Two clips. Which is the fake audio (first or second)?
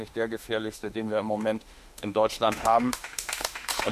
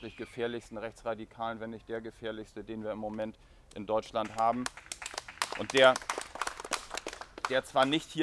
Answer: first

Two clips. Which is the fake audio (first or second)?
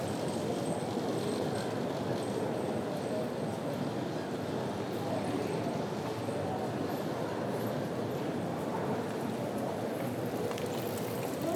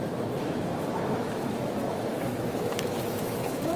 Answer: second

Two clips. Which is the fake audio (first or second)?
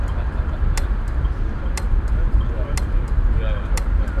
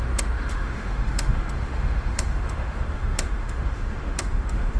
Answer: second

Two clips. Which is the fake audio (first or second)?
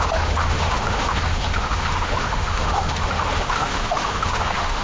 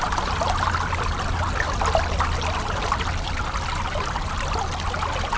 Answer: first